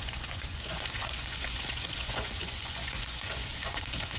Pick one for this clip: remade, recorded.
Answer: remade